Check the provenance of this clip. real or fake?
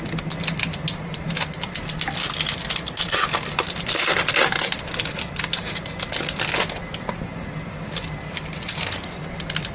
real